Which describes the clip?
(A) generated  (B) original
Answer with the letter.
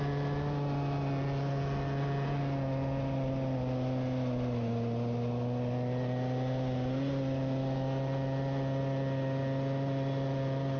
B